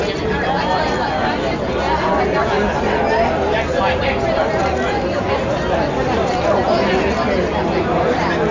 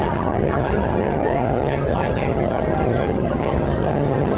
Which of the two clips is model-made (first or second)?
second